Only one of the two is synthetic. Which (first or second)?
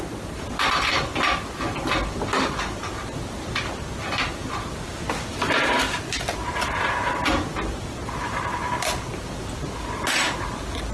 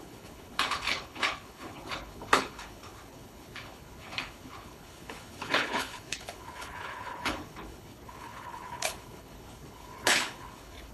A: second